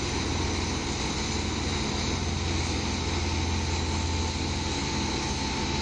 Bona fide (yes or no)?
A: yes